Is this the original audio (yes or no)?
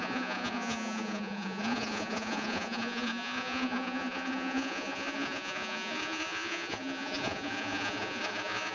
no